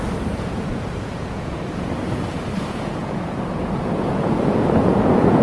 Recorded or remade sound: remade